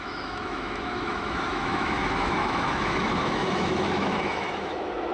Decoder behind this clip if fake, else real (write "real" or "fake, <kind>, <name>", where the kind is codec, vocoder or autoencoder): fake, autoencoder, DAC-VAE